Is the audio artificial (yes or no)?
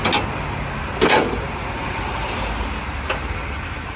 no